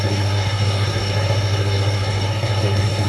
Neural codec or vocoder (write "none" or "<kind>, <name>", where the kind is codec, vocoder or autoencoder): codec, SNAC